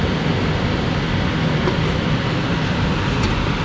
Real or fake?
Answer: real